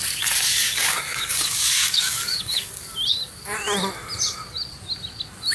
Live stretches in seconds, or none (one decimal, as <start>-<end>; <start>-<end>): 0.0-0.5; 2.7-5.5